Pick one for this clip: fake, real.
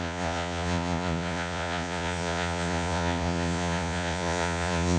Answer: fake